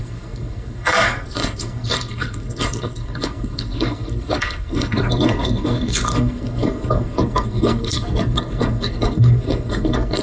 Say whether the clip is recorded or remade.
remade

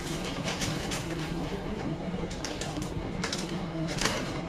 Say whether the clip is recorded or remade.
remade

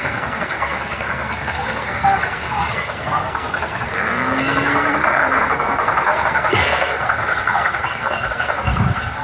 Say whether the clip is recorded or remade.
remade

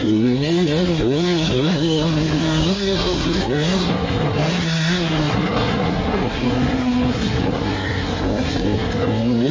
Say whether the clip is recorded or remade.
remade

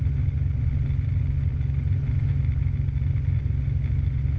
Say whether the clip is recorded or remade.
recorded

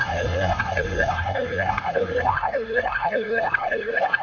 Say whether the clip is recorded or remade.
remade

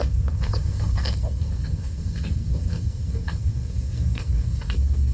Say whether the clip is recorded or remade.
remade